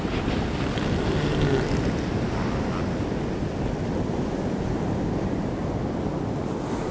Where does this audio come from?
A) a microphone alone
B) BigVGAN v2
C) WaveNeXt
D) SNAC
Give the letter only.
A